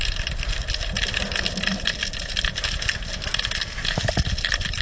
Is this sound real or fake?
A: real